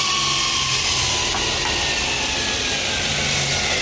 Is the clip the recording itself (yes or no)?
yes